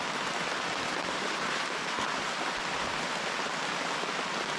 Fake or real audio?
real